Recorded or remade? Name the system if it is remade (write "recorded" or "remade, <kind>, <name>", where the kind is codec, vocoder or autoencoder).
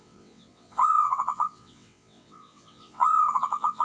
remade, vocoder, WaveNeXt